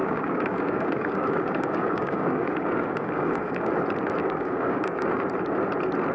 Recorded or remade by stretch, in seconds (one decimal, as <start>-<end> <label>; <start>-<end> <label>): 0.0-3.7 remade; 3.7-4.2 recorded; 4.2-5.1 remade; 5.1-6.1 recorded